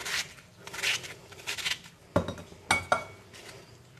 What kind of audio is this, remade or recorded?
recorded